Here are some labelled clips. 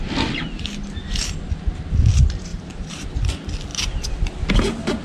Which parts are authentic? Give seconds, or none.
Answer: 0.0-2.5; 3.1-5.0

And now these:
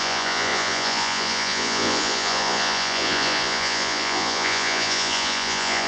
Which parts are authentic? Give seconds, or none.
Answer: none

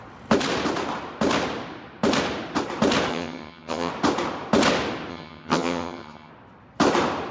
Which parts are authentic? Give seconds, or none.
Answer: 0.0-3.1; 3.9-5.1; 6.3-7.3

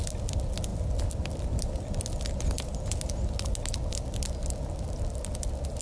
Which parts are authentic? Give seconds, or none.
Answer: 0.0-5.8

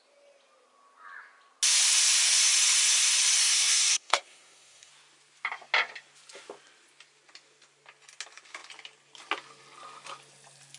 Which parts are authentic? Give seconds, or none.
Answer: 0.0-3.4; 4.9-10.8